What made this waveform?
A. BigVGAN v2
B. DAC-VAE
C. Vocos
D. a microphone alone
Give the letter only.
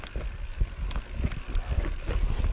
D